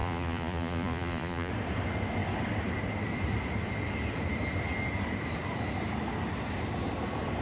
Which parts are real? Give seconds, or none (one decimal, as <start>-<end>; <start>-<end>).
1.5-7.4